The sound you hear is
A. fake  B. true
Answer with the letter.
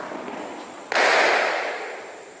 B